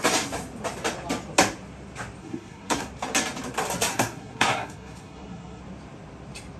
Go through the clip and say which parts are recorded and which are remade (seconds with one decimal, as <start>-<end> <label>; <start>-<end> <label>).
0.0-2.2 recorded; 2.2-2.9 remade; 2.9-3.9 recorded; 3.9-5.6 remade; 5.6-6.6 recorded